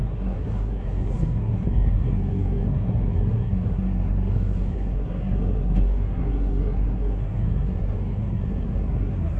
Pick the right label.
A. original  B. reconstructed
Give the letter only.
B